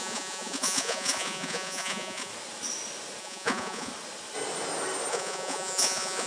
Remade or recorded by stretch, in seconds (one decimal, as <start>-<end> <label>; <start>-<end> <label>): 0.0-2.3 remade; 2.3-3.2 recorded; 3.2-3.9 remade; 3.9-5.1 recorded; 5.1-6.3 remade